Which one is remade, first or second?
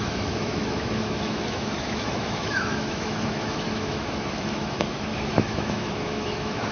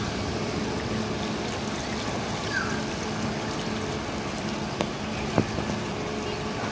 first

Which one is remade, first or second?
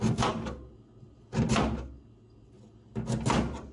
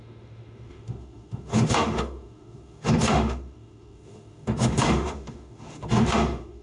second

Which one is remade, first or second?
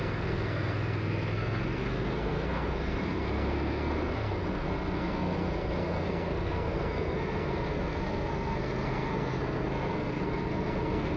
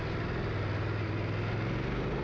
first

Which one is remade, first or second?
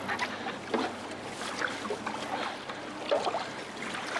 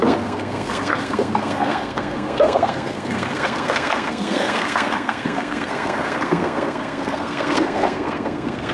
second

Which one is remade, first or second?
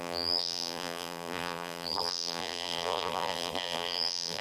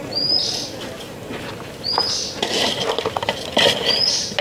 first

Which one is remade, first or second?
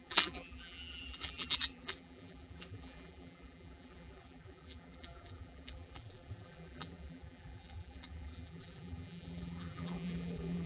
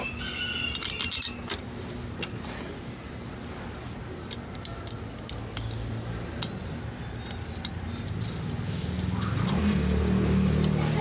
first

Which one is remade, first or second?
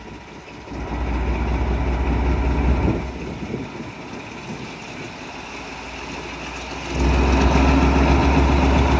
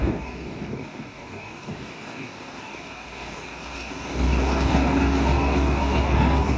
second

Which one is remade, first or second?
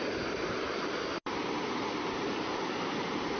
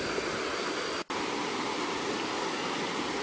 first